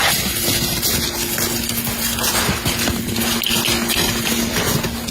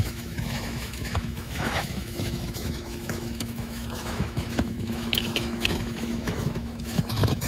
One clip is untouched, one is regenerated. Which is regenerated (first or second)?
second